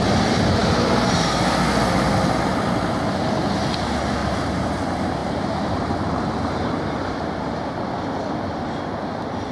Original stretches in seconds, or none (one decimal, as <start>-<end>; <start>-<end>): 0.0-4.2; 4.7-5.2; 7.6-9.5